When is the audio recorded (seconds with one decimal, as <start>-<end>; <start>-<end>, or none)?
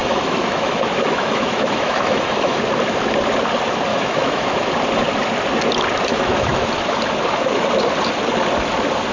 2.6-3.9; 4.7-6.1; 6.7-9.1